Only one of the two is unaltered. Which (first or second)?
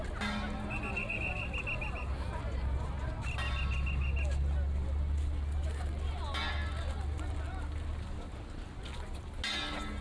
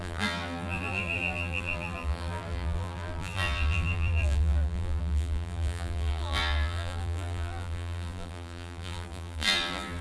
first